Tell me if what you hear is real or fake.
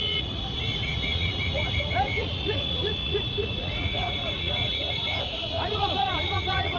fake